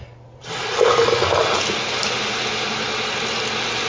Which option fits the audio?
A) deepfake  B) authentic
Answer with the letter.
B